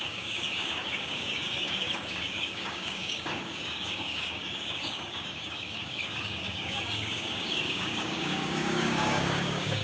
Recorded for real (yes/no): no